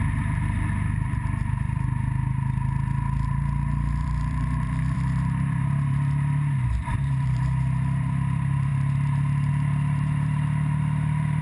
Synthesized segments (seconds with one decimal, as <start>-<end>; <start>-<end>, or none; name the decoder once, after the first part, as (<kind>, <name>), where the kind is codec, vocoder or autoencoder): 0.0-11.4 (vocoder, BigVGAN v2)